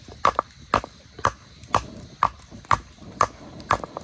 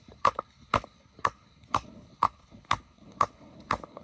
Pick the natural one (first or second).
first